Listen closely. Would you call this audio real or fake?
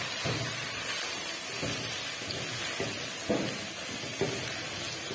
real